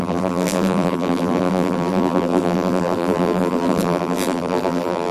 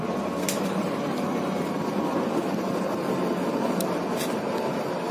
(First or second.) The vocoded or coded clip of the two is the first